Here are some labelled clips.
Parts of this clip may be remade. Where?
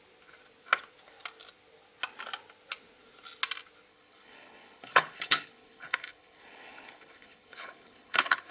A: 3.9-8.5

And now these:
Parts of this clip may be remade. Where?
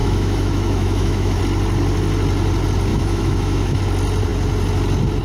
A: 0.0-1.4; 2.9-3.8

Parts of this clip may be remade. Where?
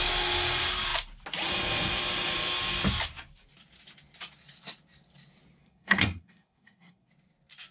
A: 5.6-7.1